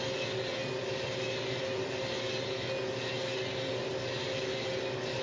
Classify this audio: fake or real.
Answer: real